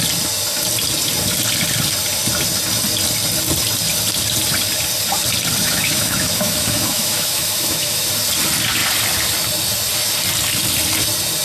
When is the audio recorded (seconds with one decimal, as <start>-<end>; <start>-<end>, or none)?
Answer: 0.0-5.6; 8.1-11.4